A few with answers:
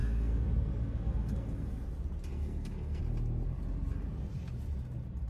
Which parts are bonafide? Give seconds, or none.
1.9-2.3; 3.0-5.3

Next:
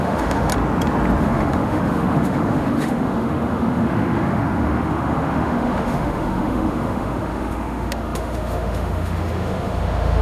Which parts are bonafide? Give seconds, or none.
0.5-1.2

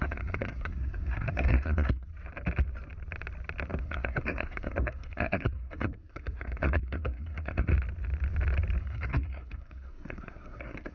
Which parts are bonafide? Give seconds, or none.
2.1-3.8; 7.7-8.8

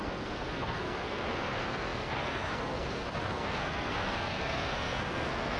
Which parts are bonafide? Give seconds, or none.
none

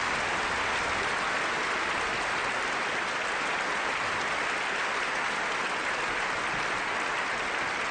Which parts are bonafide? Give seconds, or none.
0.0-7.9

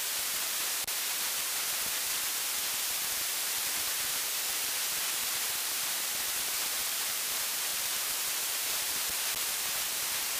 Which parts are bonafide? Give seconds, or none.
none